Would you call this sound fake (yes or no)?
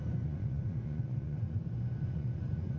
yes